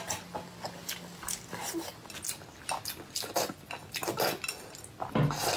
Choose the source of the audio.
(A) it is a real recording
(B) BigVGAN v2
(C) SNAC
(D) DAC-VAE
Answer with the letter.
A